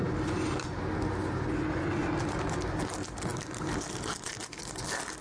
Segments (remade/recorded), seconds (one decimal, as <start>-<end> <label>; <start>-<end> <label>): 0.0-5.2 recorded